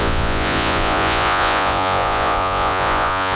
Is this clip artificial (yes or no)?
yes